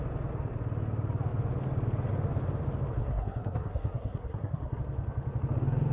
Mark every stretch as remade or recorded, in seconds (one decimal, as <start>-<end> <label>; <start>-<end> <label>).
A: 0.0-3.0 recorded; 3.0-4.8 remade; 4.8-5.9 recorded